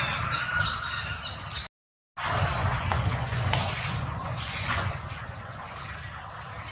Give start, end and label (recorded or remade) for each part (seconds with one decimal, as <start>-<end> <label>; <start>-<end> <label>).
0.0-2.6 recorded; 2.6-5.7 remade; 5.7-6.7 recorded